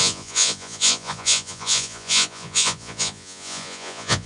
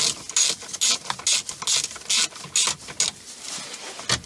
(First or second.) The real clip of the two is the second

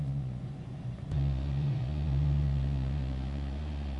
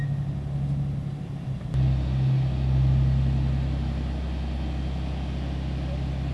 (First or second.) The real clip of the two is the second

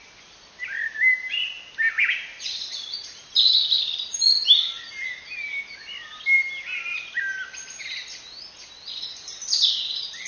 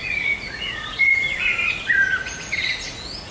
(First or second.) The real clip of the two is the first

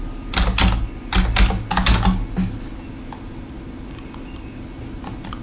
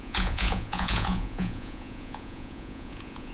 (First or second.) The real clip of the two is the first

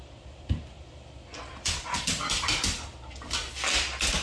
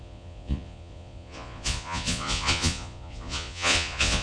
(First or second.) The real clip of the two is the first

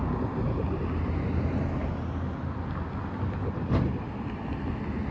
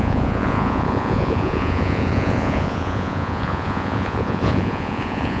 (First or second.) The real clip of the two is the first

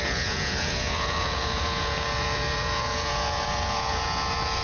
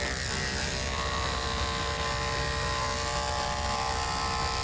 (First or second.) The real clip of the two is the second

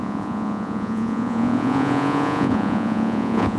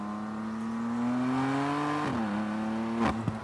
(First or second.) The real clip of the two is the second